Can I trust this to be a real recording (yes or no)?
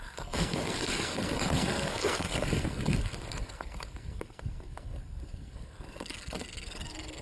no